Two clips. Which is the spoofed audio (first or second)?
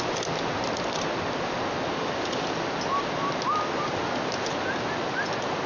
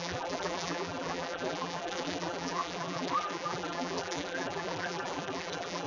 second